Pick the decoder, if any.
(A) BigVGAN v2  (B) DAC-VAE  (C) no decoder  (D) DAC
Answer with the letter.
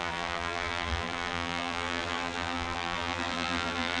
A